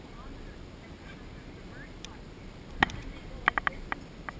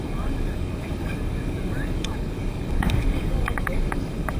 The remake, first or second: second